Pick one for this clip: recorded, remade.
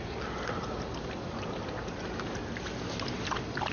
recorded